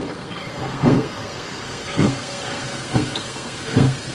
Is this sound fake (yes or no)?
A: yes